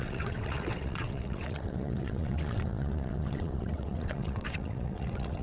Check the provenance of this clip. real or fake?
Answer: fake